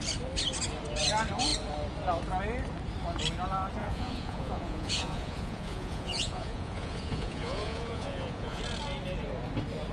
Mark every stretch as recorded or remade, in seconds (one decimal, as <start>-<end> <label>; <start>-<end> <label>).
0.0-3.8 recorded; 3.8-8.6 remade; 8.6-9.9 recorded